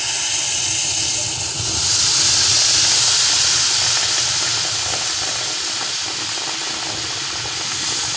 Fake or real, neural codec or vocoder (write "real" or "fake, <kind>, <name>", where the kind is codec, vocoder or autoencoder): real